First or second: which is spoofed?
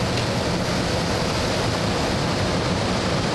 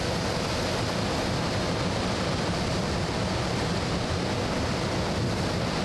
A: first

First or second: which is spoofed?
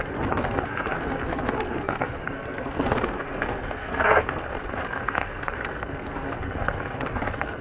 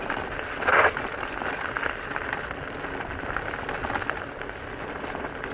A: first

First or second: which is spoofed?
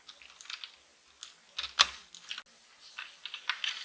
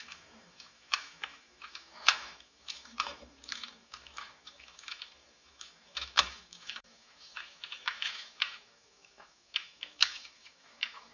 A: second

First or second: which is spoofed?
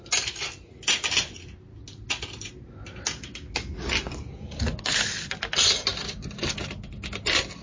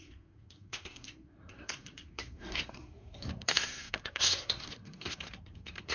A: second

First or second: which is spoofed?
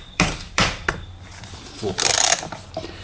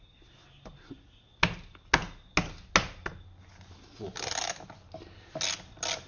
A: first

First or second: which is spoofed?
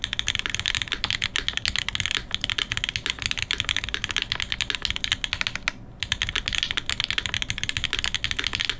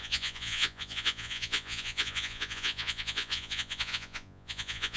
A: second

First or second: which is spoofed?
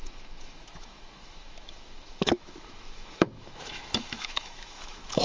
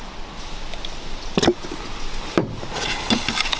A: first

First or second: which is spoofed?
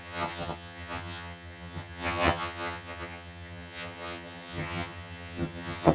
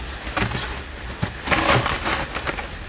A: first